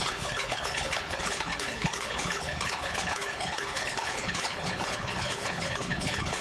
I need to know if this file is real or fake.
fake